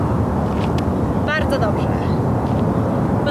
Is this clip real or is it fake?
real